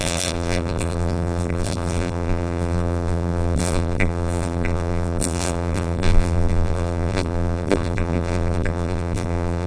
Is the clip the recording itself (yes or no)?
no